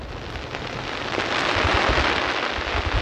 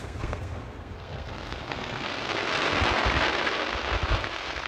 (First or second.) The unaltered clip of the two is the first